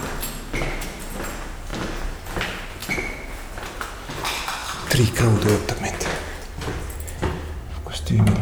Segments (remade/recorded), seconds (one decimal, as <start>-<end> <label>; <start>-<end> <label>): 0.0-4.6 recorded; 4.6-5.2 remade; 5.2-8.4 recorded